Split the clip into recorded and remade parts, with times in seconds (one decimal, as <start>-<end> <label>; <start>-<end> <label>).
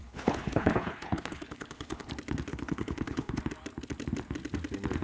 0.0-2.1 remade; 2.1-2.5 recorded; 2.5-3.4 remade; 3.4-5.0 recorded